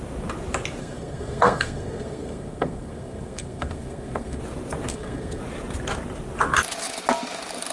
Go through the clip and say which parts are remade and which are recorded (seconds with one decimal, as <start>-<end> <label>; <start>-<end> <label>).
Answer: 0.0-0.8 recorded; 0.8-4.4 remade; 4.4-4.9 recorded; 4.9-5.4 remade; 5.4-7.7 recorded